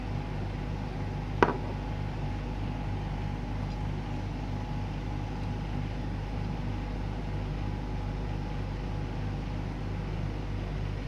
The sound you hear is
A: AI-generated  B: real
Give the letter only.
B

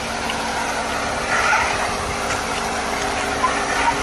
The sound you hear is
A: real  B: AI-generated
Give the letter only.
A